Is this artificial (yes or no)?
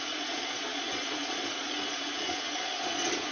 yes